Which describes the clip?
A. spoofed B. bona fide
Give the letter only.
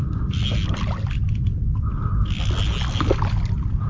B